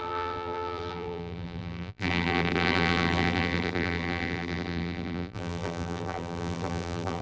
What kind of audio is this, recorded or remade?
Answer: remade